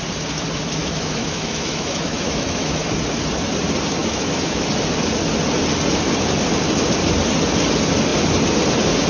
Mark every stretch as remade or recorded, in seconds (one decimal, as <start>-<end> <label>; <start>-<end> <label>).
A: 0.0-0.8 recorded; 0.8-2.9 remade; 2.9-4.0 recorded; 4.0-4.7 remade; 4.7-9.1 recorded